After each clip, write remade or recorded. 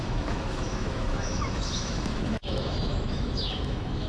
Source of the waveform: remade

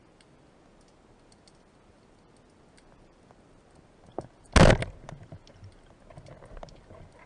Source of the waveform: recorded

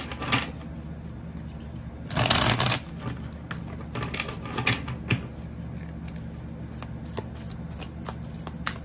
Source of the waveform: recorded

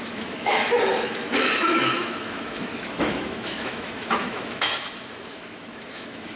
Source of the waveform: remade